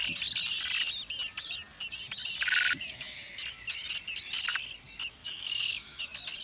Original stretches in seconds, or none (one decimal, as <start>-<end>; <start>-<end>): 0.0-5.2; 6.0-6.4